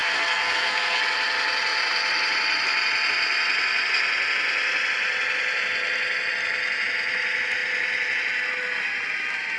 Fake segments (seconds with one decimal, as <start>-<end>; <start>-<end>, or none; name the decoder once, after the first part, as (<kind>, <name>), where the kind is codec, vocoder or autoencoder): 0.0-1.0 (codec, SNAC)